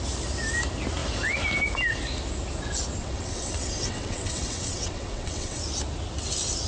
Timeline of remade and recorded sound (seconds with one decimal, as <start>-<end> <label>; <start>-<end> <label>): 0.0-3.0 recorded; 3.0-5.6 remade; 5.6-6.7 recorded